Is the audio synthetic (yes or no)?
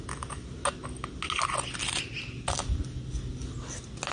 no